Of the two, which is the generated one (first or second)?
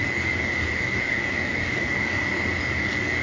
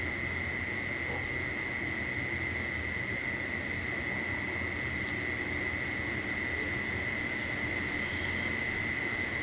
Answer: first